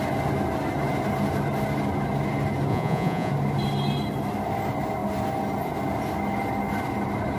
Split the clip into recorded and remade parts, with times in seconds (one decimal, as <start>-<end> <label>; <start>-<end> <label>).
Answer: 0.0-2.7 recorded; 2.7-3.3 remade; 3.3-7.4 recorded